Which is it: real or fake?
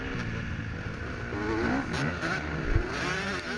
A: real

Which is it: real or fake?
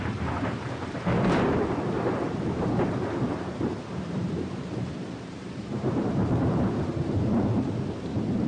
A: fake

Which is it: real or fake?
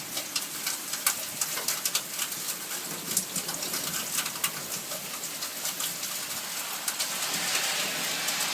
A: real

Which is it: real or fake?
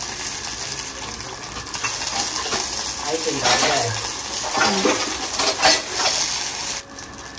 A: real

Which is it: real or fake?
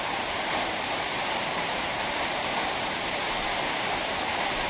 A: fake